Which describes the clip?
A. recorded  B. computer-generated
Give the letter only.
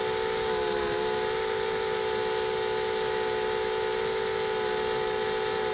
A